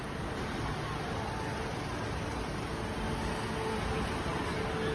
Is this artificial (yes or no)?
no